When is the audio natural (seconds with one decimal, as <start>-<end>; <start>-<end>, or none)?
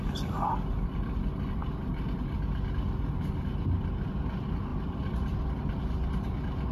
0.0-4.7; 5.5-6.7